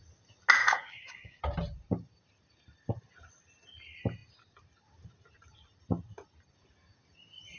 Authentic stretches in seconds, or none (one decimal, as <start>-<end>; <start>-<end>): 0.0-0.6; 1.4-7.6